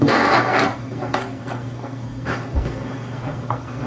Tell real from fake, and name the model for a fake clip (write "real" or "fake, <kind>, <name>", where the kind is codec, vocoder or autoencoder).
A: fake, codec, SNAC